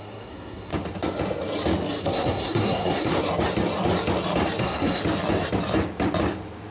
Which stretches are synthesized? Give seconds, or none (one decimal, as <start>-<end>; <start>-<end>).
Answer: 0.0-0.7; 2.0-3.1; 4.6-5.0